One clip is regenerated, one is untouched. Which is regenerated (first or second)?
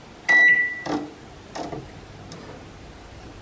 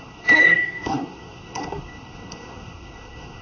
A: second